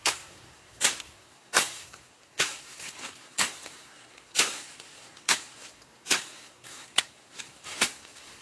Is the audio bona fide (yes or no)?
no